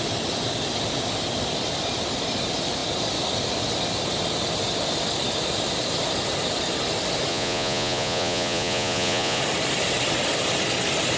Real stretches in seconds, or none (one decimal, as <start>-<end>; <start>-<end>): 0.0-7.3; 9.4-11.2